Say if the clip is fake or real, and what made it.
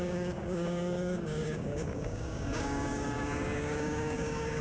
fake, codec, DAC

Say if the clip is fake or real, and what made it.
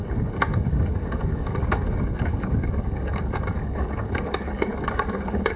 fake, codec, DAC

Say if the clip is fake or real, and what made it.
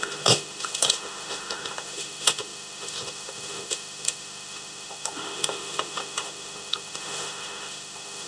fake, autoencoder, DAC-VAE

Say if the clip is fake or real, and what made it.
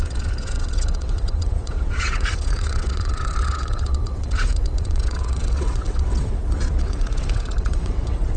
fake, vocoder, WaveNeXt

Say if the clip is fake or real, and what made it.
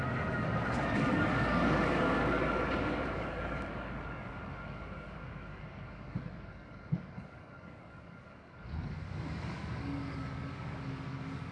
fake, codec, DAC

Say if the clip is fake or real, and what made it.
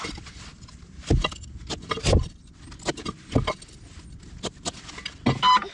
real